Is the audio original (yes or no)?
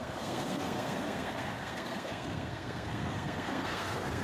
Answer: no